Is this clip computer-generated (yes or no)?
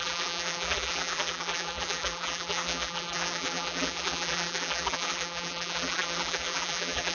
yes